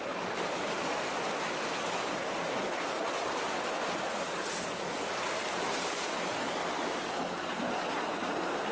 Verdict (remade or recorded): recorded